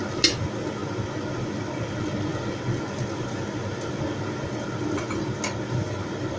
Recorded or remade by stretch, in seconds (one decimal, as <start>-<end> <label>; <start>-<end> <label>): 0.0-6.4 recorded